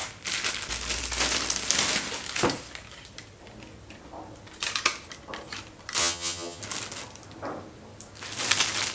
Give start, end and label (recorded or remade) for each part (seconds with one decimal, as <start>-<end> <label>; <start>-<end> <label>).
0.0-6.0 recorded; 6.0-6.6 remade; 6.6-8.9 recorded